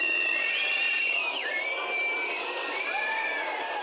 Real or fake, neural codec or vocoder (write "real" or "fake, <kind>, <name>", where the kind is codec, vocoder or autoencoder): fake, vocoder, BigVGAN v2